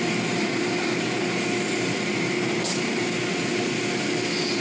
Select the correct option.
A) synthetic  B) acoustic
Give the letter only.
B